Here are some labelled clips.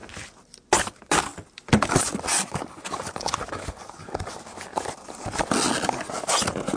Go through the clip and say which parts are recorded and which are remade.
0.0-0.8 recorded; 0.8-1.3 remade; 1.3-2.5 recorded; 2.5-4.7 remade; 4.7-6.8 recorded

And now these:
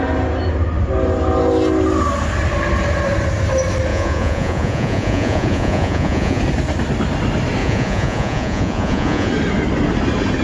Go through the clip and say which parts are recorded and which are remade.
0.0-3.9 recorded; 3.9-6.4 remade; 6.4-7.6 recorded; 7.6-9.3 remade; 9.3-10.4 recorded